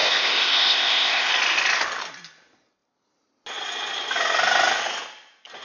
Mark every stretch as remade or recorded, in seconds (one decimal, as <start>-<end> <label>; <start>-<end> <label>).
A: 0.0-1.3 remade; 1.3-5.6 recorded